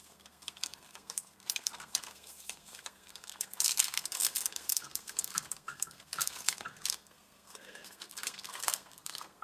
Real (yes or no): no